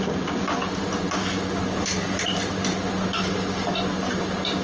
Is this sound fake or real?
real